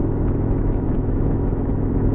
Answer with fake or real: fake